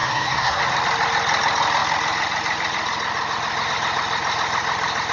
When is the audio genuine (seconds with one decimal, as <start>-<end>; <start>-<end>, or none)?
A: 0.6-5.1